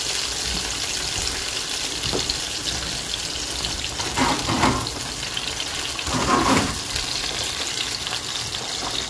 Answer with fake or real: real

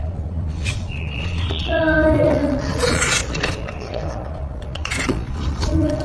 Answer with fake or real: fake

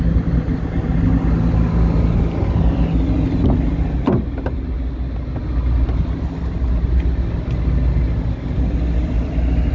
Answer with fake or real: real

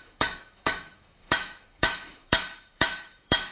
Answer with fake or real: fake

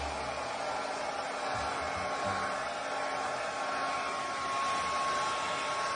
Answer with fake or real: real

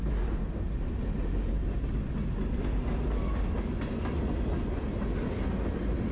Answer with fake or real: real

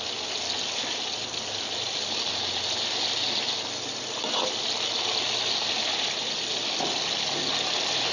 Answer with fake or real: real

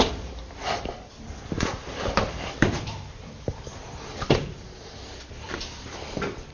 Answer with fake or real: fake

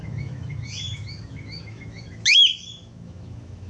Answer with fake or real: fake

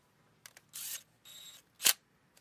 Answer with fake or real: real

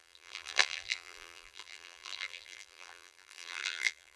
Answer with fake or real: fake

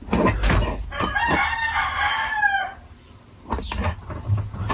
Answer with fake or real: real